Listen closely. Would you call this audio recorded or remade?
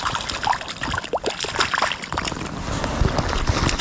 recorded